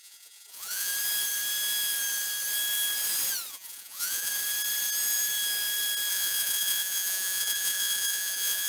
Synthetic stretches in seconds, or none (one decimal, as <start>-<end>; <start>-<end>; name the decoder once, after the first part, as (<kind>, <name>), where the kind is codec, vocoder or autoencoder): 0.0-0.9 (vocoder, Vocos); 3.5-4.3; 6.1-8.7